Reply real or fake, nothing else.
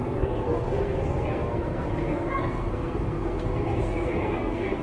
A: fake